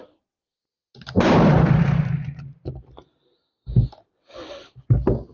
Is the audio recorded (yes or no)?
yes